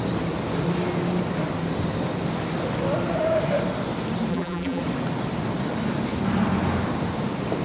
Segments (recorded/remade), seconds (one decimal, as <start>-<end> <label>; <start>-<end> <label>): 0.0-4.3 recorded; 4.3-4.8 remade; 4.8-7.6 recorded

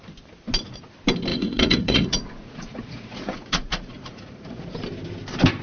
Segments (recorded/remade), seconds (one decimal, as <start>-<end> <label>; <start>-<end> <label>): 0.0-1.3 recorded; 1.3-4.7 remade; 4.7-5.6 recorded

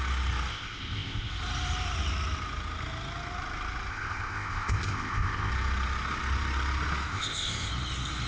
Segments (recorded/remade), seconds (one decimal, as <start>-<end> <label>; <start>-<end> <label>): 0.0-0.5 recorded; 0.5-1.3 remade; 1.3-3.9 recorded; 3.9-5.5 remade; 5.5-7.1 recorded; 7.1-7.7 remade; 7.7-8.3 recorded

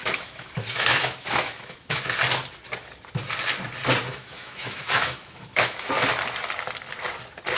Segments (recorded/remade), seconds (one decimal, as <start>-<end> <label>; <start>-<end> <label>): 0.0-2.0 remade; 2.0-4.1 recorded; 4.1-5.9 remade; 5.9-7.6 recorded

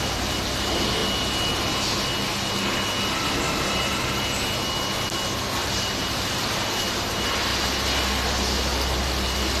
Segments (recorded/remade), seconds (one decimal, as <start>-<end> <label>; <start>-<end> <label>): 0.0-1.0 remade; 1.0-5.6 recorded; 5.6-7.5 remade; 7.5-9.6 recorded

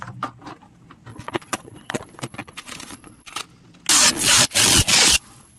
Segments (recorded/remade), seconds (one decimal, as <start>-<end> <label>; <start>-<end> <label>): 0.0-1.1 recorded; 1.1-3.4 remade; 3.4-3.9 recorded; 3.9-5.6 remade

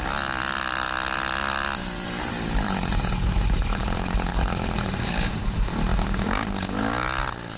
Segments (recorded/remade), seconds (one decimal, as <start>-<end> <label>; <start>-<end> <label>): 0.0-1.8 recorded; 1.8-3.8 remade; 3.8-4.3 recorded; 4.3-5.2 remade; 5.2-7.6 recorded